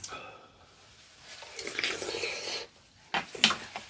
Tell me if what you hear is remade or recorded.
recorded